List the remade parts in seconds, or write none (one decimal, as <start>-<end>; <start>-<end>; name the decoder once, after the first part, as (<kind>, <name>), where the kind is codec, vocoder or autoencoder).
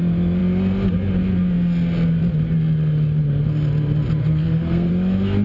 4.2-4.9 (codec, SNAC)